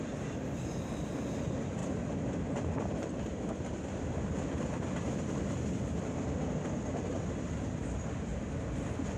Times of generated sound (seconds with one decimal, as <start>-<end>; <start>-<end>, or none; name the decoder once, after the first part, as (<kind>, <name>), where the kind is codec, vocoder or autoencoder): 1.8-7.0 (vocoder, BigVGAN v2); 8.3-9.2